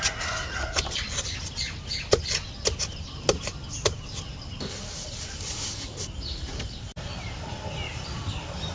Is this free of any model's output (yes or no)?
yes